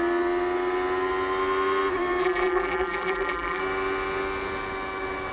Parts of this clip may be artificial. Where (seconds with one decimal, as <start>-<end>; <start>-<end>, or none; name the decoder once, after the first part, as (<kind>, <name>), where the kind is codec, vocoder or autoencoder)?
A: 2.2-3.6 (vocoder, BigVGAN v2)